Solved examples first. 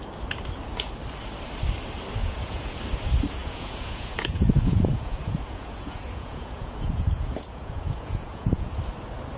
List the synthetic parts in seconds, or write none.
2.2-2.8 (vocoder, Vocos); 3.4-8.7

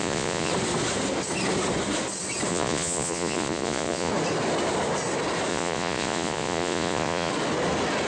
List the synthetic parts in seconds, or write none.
0.0-0.5 (vocoder, Vocos); 2.5-4.1; 5.5-7.3

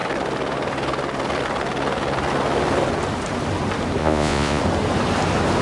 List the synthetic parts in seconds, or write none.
4.0-4.6 (vocoder, Vocos)

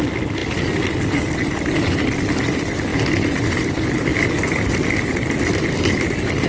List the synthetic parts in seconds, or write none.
none

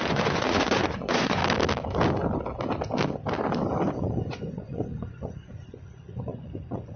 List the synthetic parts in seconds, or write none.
0.0-1.4 (vocoder, Vocos); 3.9-7.0

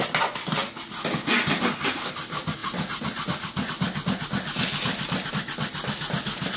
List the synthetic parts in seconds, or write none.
none

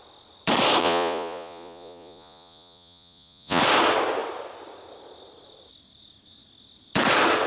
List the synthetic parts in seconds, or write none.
0.8-3.6 (vocoder, Vocos)

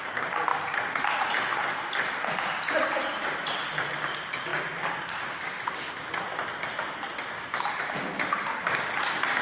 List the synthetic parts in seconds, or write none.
none